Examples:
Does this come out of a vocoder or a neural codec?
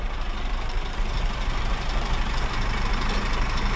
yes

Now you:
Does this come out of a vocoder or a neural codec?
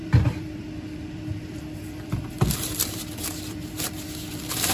yes